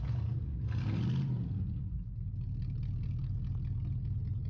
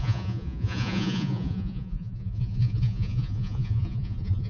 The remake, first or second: second